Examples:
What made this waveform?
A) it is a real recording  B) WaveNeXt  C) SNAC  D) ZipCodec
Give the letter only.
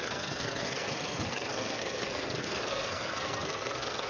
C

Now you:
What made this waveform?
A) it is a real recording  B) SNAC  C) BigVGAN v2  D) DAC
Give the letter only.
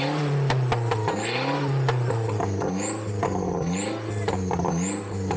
A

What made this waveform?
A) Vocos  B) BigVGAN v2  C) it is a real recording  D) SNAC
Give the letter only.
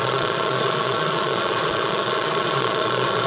A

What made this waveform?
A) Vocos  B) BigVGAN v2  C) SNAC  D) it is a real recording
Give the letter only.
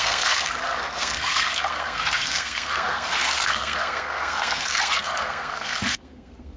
C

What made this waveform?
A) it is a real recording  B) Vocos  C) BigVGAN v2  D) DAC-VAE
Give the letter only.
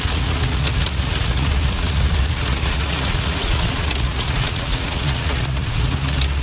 B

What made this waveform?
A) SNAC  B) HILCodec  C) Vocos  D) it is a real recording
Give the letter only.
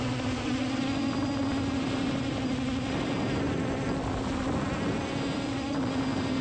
D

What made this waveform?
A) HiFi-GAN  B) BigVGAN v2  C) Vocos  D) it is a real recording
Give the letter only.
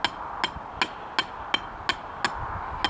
D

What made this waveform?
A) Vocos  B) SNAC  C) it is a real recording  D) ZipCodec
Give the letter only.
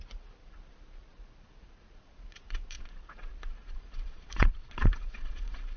A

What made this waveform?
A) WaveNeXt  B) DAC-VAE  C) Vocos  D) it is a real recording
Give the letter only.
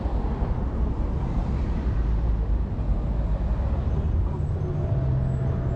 D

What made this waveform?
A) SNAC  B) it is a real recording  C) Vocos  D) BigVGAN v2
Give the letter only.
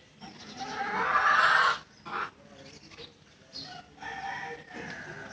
B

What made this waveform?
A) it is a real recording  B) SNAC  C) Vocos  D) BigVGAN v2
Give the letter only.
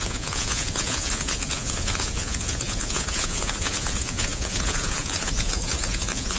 C